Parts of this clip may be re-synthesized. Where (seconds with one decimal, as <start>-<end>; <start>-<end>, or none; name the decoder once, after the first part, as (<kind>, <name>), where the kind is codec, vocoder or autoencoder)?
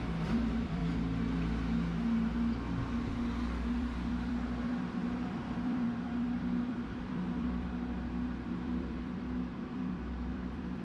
0.0-0.8 (vocoder, BigVGAN v2); 3.7-10.8